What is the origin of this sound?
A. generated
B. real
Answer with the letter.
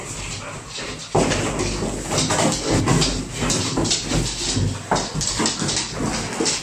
B